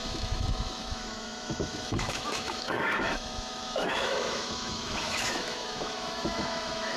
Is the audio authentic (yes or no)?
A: no